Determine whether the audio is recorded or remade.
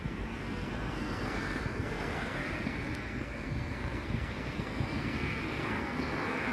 remade